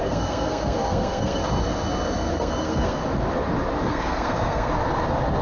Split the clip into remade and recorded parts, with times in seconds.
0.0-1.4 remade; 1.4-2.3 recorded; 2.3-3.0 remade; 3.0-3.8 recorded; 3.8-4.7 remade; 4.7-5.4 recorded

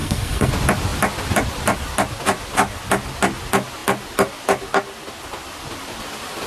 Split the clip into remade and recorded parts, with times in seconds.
0.0-0.5 remade; 0.5-6.5 recorded

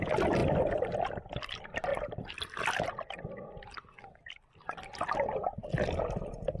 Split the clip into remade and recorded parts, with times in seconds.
0.0-6.6 recorded

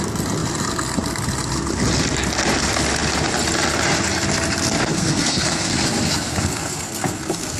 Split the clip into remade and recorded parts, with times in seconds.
0.0-4.9 recorded; 4.9-7.6 remade

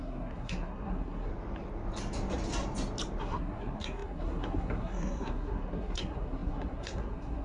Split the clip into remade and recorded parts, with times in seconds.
0.0-1.3 remade; 1.3-3.2 recorded; 3.2-7.4 remade

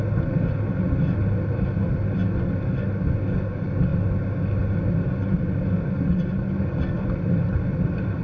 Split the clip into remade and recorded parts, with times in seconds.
0.0-8.2 recorded

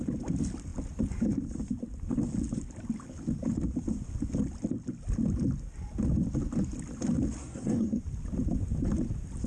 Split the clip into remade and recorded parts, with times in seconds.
0.0-7.4 recorded; 7.4-8.0 remade; 8.0-9.5 recorded